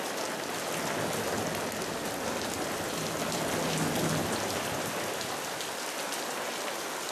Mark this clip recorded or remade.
recorded